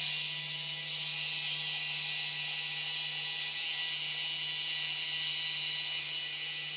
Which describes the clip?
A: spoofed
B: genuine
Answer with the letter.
B